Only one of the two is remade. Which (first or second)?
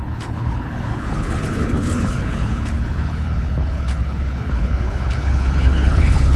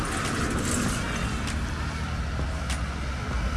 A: first